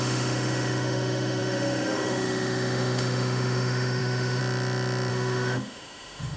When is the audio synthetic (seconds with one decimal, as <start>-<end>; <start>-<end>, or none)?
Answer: 0.0-4.4; 5.1-6.4